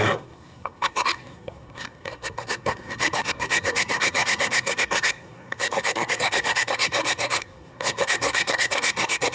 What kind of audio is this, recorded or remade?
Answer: remade